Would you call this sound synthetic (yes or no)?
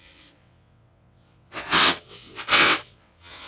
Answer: yes